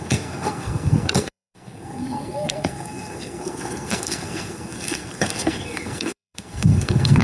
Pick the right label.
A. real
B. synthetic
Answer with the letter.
B